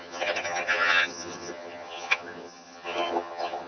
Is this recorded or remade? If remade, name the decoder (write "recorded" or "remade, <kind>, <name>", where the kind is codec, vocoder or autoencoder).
remade, vocoder, HiFi-GAN